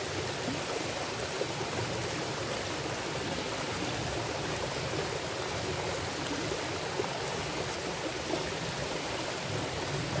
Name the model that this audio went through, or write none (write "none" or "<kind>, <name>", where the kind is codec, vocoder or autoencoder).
none